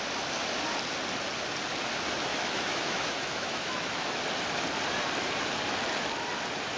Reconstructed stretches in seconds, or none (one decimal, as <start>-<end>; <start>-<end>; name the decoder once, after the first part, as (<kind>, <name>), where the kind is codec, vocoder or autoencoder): 2.3-4.2 (autoencoder, DAC-VAE)